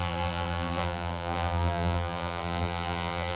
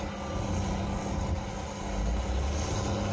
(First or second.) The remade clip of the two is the first